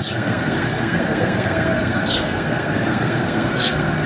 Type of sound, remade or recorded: remade